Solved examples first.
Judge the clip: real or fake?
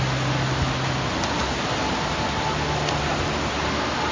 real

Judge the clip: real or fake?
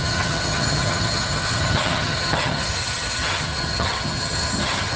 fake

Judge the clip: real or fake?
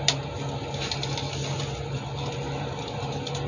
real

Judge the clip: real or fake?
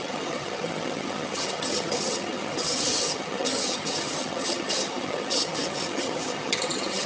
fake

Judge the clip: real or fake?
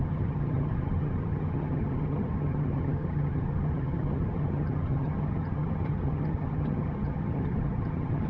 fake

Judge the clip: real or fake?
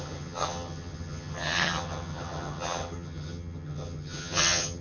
fake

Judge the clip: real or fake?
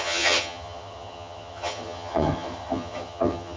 fake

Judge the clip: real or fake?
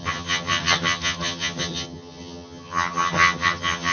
fake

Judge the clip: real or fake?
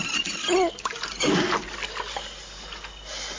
real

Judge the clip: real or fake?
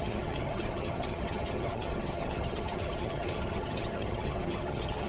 fake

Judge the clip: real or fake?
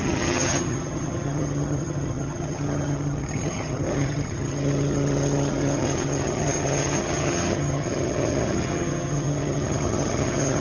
fake